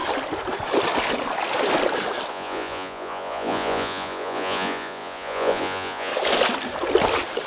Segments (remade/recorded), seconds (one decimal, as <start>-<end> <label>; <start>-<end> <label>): 0.0-2.3 recorded; 2.3-6.1 remade; 6.1-7.5 recorded